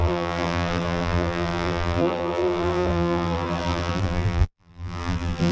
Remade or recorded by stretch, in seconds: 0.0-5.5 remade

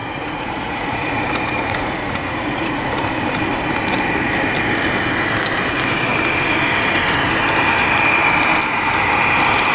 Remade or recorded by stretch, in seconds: 0.0-3.0 remade; 3.0-9.7 recorded

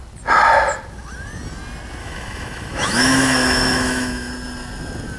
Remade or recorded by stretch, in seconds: 0.0-2.0 recorded; 2.0-4.3 remade; 4.3-5.2 recorded

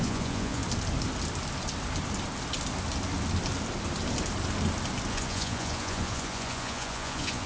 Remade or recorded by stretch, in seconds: 0.0-0.6 remade; 0.6-5.1 recorded; 5.1-7.5 remade

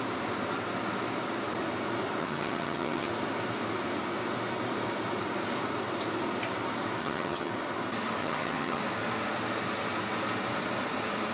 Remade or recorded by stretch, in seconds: 0.0-2.2 recorded; 2.2-3.1 remade; 3.1-7.0 recorded; 7.0-7.5 remade; 7.5-8.2 recorded; 8.2-8.8 remade; 8.8-11.3 recorded

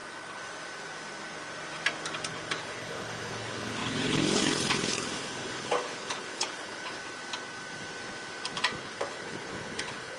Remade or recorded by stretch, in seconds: 0.0-2.3 recorded; 2.3-7.0 remade; 7.0-8.8 recorded; 8.8-10.2 remade

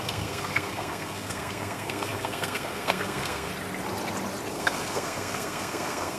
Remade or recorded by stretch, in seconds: 0.0-3.5 remade; 3.5-4.5 recorded; 4.5-6.2 remade